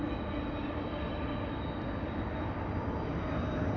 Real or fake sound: real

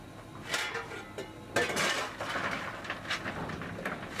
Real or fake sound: real